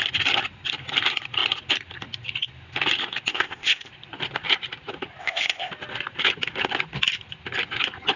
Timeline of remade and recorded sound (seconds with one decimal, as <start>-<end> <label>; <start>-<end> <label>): 0.0-3.3 recorded; 3.3-3.9 remade; 3.9-5.2 recorded; 5.2-5.7 remade; 5.7-8.2 recorded